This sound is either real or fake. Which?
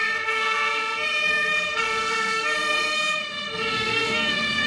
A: fake